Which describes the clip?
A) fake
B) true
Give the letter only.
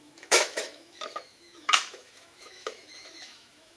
A